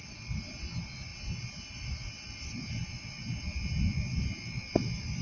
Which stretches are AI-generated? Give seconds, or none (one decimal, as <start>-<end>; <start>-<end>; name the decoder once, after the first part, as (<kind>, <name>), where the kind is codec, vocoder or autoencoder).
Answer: none